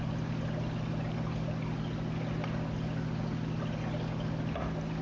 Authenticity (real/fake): real